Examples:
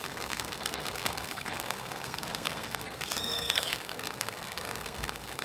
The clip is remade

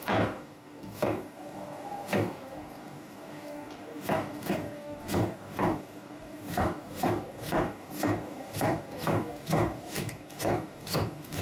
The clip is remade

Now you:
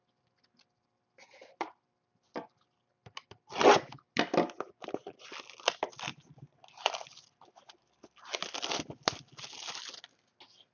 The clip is recorded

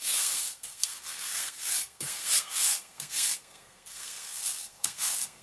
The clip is remade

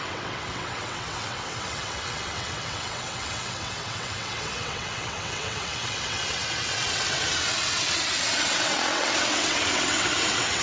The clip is remade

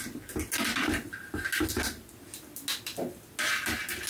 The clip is recorded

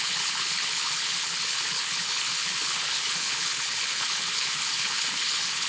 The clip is remade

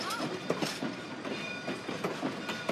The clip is recorded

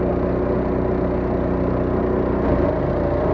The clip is recorded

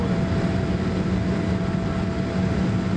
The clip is recorded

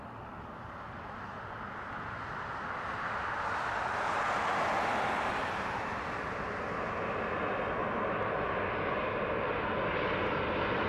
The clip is recorded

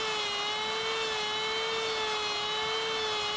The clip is recorded